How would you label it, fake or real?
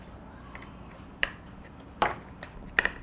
real